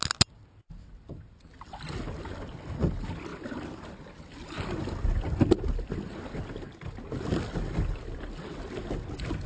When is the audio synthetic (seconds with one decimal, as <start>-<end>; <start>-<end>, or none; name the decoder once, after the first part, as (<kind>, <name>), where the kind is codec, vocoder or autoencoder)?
none